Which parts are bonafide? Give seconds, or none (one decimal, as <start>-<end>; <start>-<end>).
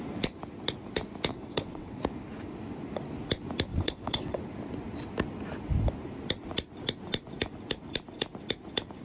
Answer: 0.0-1.3; 2.0-3.7; 4.4-9.0